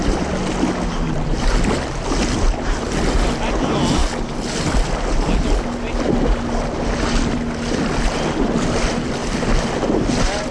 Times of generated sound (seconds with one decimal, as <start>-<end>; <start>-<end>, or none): none